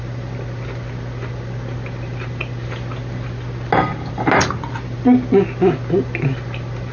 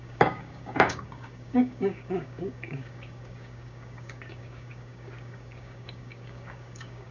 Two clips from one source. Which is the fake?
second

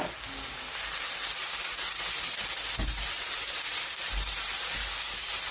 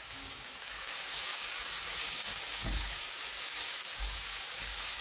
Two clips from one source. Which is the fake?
second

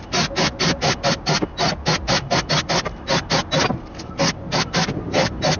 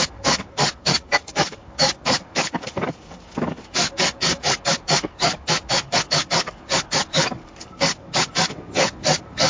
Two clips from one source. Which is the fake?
second